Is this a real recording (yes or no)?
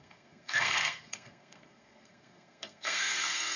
no